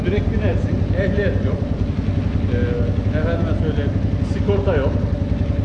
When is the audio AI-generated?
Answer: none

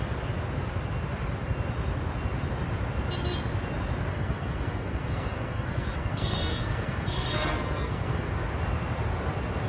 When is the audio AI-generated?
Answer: 4.1-8.3

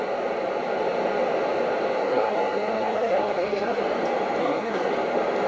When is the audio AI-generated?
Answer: 2.0-3.8; 4.4-4.9

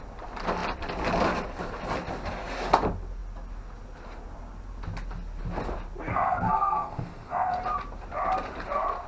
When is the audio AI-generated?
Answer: 6.1-7.6

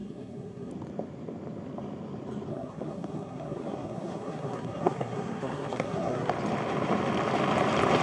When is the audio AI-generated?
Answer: 0.0-0.7; 2.5-6.3

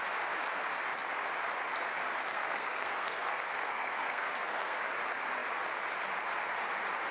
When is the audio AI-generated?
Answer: 2.3-4.8

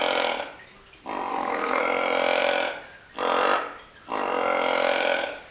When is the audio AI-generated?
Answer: 1.3-1.8

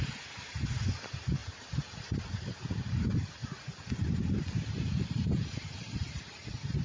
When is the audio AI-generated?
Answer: none